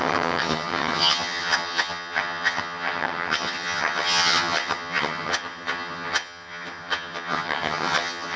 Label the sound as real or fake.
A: fake